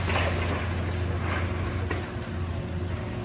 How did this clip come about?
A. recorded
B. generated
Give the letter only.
A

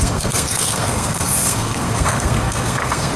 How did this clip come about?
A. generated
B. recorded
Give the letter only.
A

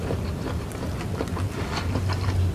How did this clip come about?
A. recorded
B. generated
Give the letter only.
A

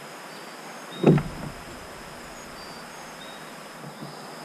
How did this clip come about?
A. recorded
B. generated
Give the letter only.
A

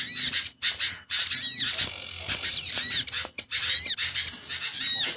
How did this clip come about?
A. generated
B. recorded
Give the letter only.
B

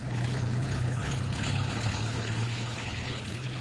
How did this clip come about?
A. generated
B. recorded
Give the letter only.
A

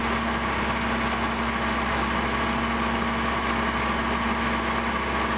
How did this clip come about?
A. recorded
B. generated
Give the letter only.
A